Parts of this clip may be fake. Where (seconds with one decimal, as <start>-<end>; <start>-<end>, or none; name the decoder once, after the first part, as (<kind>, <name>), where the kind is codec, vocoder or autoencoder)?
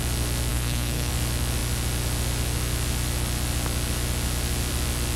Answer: 0.5-1.1 (codec, SNAC)